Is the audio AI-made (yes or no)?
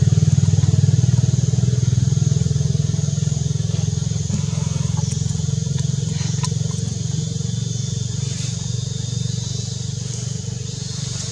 no